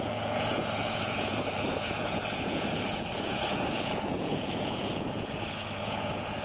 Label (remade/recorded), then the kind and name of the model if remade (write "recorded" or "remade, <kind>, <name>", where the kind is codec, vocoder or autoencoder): remade, vocoder, Vocos